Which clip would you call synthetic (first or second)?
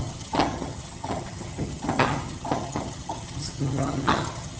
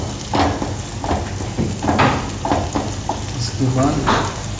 first